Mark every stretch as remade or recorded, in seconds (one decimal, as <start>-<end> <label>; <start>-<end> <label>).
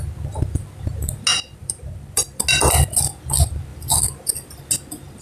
0.0-1.3 recorded; 1.3-2.4 remade; 2.4-3.7 recorded; 3.7-4.7 remade; 4.7-5.2 recorded